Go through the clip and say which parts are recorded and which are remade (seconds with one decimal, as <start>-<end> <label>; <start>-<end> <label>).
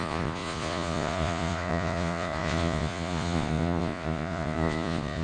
0.0-5.2 remade